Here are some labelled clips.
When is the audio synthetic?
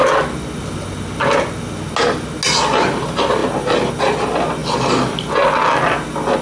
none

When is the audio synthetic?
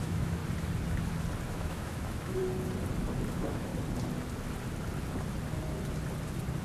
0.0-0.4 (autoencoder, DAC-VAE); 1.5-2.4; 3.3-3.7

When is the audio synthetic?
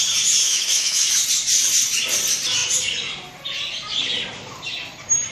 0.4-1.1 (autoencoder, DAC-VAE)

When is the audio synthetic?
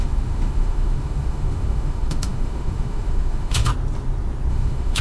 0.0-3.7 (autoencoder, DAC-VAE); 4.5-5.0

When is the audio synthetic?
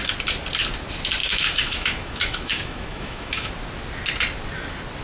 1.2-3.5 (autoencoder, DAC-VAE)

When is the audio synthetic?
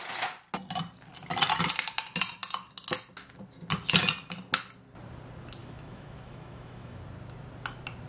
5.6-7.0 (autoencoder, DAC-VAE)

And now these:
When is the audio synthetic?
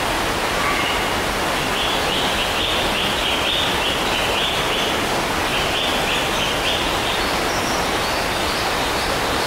none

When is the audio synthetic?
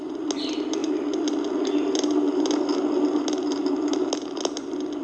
none